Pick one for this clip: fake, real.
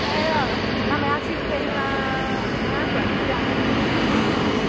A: real